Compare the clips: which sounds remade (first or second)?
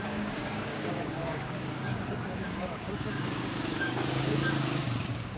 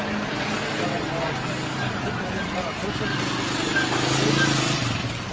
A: first